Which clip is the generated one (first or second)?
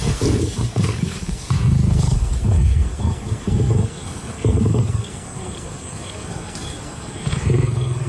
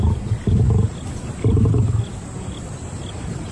first